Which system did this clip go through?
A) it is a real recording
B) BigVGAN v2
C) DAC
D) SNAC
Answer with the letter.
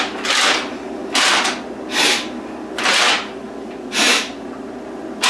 A